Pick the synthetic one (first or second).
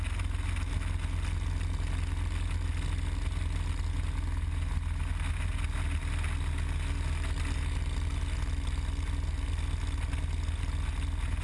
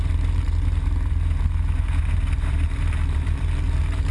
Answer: second